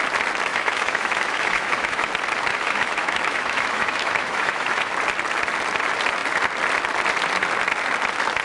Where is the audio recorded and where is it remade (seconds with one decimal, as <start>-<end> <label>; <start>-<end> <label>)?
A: 0.0-0.5 recorded; 0.5-2.1 remade; 2.1-2.5 recorded; 2.5-4.9 remade; 4.9-8.4 recorded